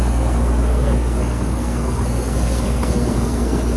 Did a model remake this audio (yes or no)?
yes